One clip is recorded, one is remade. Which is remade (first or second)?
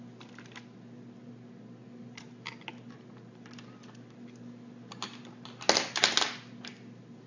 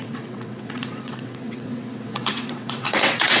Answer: second